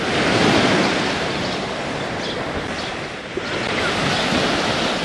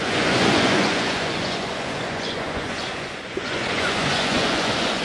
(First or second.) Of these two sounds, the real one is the first